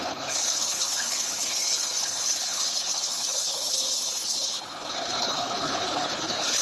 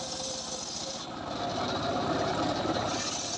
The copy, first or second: first